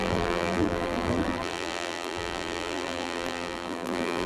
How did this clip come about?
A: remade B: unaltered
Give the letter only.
A